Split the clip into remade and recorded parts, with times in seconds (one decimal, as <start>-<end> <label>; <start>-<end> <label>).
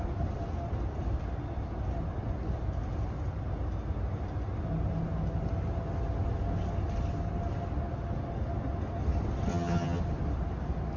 0.0-9.5 recorded; 9.5-10.0 remade; 10.0-11.0 recorded